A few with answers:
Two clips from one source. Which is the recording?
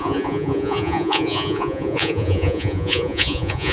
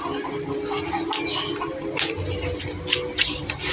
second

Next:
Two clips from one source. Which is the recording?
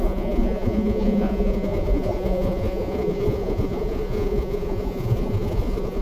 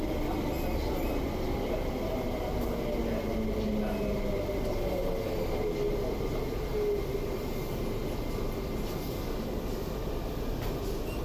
second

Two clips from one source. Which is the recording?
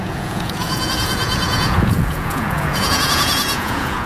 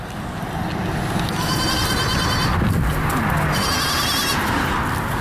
second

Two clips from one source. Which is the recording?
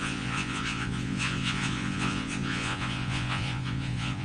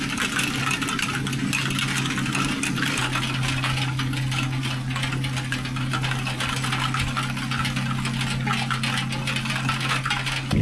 second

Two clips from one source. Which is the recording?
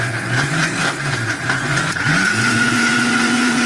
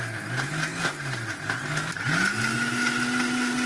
second